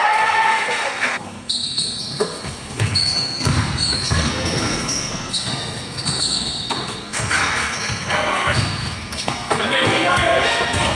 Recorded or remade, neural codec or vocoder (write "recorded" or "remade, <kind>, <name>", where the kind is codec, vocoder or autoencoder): remade, codec, SNAC